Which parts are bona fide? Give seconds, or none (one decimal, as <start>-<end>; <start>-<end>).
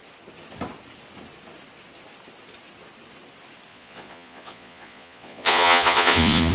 0.0-3.7